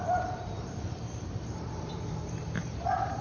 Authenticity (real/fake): fake